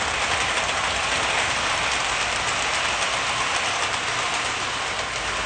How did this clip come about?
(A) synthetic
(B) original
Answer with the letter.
B